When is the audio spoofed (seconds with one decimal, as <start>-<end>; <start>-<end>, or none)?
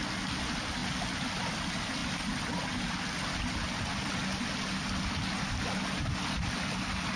none